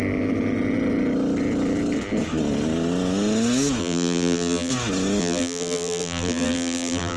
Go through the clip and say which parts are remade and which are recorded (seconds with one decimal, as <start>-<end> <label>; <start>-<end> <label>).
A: 0.0-3.8 recorded; 3.8-4.7 remade; 4.7-5.2 recorded; 5.2-7.2 remade

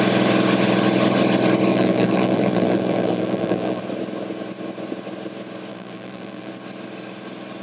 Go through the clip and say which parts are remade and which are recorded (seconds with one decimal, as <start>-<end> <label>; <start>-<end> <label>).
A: 0.0-1.7 recorded; 1.7-3.8 remade; 3.8-5.7 recorded; 5.7-6.5 remade; 6.5-7.6 recorded